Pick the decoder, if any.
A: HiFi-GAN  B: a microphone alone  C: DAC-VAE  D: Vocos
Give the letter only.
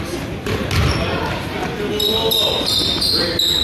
B